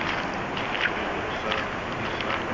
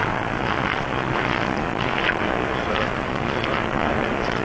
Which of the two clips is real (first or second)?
first